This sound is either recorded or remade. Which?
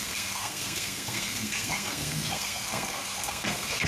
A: remade